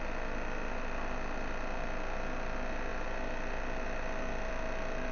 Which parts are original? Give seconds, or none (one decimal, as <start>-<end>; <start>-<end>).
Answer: 0.0-5.1